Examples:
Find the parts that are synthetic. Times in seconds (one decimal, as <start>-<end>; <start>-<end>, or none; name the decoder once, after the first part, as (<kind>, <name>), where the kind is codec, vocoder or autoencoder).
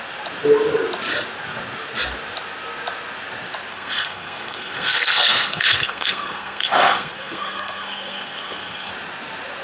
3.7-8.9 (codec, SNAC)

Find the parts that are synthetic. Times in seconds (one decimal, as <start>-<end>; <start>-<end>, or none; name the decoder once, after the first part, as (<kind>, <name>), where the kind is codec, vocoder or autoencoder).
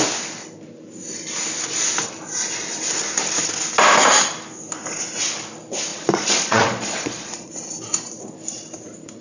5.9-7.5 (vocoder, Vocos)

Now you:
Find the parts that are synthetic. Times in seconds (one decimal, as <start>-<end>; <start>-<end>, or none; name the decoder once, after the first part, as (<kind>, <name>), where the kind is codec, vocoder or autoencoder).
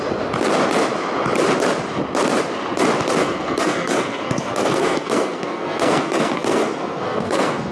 3.2-7.7 (codec, SNAC)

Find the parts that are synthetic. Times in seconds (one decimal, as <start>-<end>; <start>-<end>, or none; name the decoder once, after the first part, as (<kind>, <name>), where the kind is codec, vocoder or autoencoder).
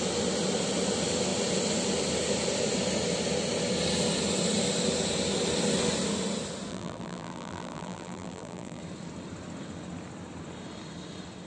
6.7-8.8 (vocoder, BigVGAN v2)